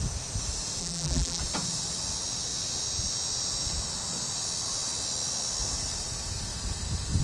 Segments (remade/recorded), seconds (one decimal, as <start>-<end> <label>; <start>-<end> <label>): 0.0-0.8 recorded; 0.8-1.4 remade; 1.4-7.2 recorded